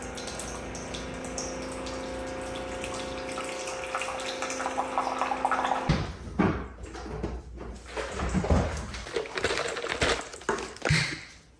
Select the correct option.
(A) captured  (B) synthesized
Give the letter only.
A